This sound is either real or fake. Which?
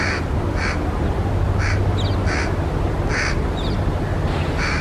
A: real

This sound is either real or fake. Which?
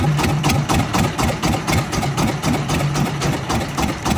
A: fake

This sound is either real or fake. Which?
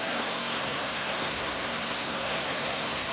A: fake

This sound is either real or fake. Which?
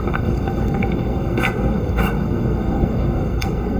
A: fake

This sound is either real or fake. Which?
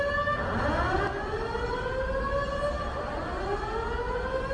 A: real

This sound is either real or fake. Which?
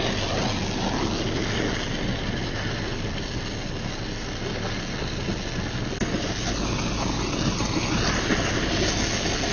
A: real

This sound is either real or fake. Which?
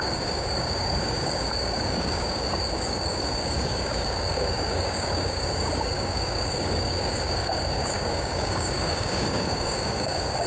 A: fake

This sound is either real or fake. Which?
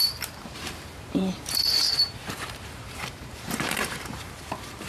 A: fake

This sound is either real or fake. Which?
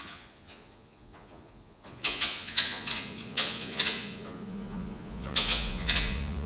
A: fake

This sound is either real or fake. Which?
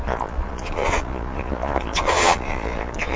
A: fake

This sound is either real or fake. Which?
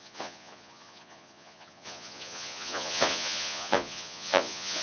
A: fake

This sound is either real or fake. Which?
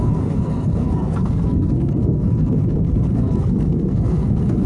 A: fake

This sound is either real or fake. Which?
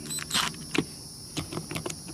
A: fake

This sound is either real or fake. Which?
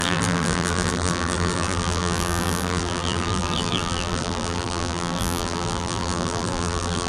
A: fake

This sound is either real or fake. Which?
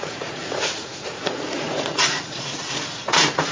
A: fake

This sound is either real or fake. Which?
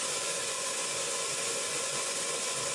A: fake